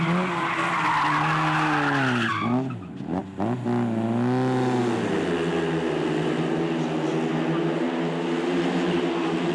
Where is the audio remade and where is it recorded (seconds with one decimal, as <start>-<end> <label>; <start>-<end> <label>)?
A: 0.0-9.5 recorded